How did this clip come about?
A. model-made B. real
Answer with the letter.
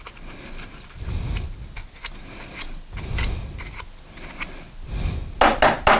B